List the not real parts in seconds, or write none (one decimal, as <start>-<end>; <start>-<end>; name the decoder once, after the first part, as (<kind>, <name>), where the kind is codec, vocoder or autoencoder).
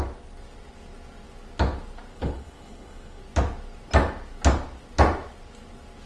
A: 2.1-3.2 (codec, HILCodec)